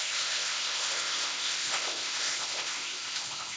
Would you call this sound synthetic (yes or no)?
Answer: yes